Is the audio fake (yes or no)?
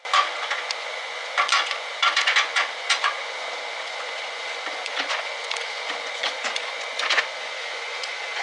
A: yes